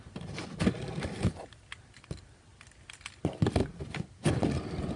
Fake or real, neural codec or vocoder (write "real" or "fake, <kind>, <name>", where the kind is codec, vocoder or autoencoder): real